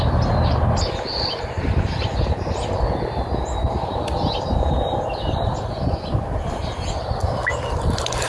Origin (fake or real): fake